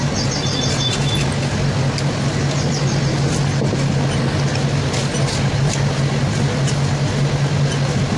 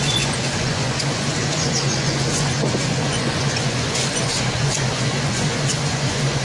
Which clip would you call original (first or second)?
first